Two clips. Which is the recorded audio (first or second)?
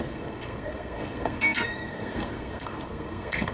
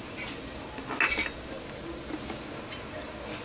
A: second